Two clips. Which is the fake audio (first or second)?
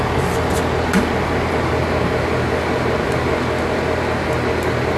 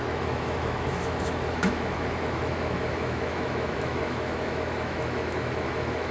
second